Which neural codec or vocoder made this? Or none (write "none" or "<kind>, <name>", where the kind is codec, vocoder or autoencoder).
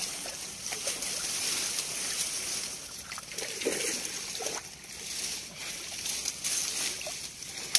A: none